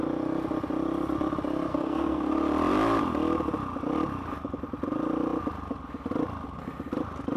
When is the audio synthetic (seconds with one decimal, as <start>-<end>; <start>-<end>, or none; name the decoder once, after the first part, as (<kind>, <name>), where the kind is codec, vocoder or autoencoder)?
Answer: 1.7-2.3 (codec, SNAC)